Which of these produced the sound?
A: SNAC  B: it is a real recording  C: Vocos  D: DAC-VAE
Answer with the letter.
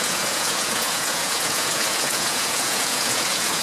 C